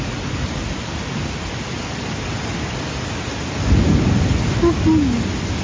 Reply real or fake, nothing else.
real